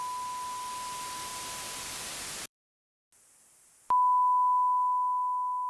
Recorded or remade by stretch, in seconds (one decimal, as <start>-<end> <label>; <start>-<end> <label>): 0.0-5.7 recorded